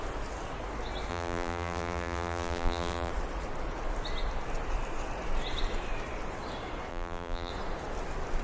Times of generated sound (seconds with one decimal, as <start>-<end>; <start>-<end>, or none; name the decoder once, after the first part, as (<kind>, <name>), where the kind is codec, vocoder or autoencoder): 1.1-3.1 (vocoder, BigVGAN v2); 6.9-7.5